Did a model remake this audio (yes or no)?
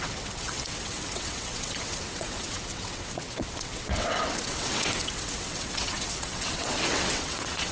yes